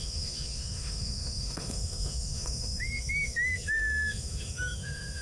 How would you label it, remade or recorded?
remade